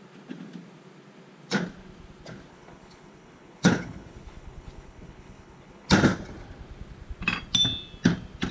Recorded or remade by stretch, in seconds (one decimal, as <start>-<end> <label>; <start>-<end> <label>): 0.0-2.5 recorded; 2.5-5.9 remade; 5.9-8.5 recorded

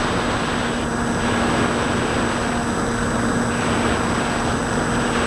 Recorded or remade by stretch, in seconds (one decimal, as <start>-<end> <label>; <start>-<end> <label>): 0.0-5.3 recorded